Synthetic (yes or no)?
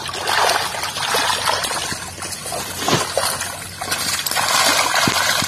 no